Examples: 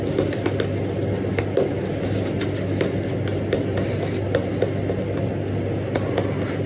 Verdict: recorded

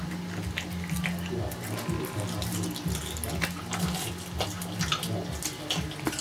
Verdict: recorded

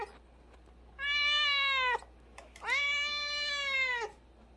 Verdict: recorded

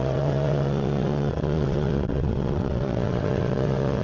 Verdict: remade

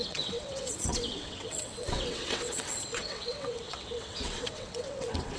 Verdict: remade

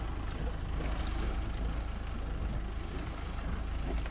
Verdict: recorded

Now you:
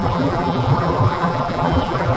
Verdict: remade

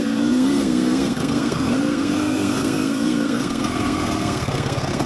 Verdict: remade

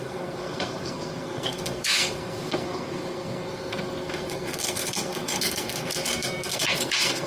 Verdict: remade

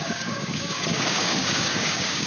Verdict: remade